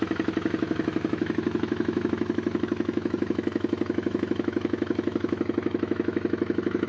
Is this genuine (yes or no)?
no